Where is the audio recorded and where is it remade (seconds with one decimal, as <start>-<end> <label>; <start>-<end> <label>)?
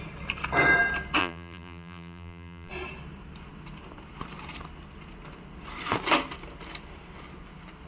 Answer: 0.0-1.2 recorded; 1.2-2.7 remade; 2.7-7.9 recorded